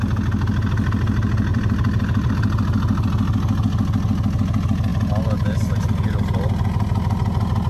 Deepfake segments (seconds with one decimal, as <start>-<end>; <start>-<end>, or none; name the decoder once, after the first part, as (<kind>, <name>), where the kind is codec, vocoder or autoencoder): 1.5-2.3 (vocoder, BigVGAN v2)